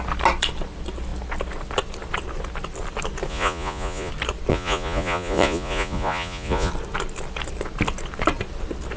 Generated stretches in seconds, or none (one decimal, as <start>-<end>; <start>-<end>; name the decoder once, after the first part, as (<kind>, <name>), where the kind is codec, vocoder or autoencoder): 3.3-4.1 (vocoder, Vocos); 4.5-6.7